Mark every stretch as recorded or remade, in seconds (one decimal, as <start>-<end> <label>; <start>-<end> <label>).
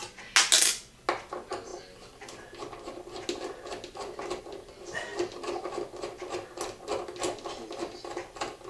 0.0-8.7 recorded